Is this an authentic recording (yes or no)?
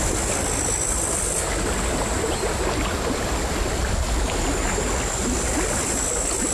yes